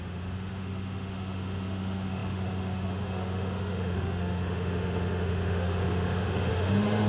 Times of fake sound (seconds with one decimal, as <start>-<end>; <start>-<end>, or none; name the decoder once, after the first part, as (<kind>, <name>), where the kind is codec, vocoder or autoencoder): 0.0-7.1 (autoencoder, DAC-VAE)